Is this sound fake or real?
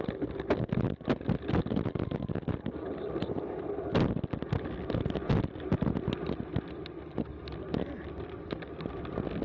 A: real